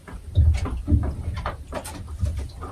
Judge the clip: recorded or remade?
recorded